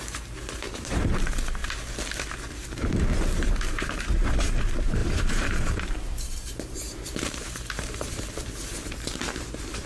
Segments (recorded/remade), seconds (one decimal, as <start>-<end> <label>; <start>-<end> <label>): 0.0-1.6 remade; 1.6-2.5 recorded; 2.5-9.9 remade